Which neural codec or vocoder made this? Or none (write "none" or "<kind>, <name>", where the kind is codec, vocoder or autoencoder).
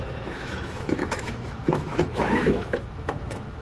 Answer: autoencoder, DAC-VAE